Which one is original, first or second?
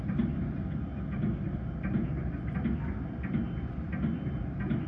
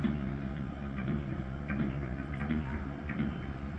first